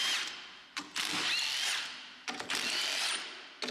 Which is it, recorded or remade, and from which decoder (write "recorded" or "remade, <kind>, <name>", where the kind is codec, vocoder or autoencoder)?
recorded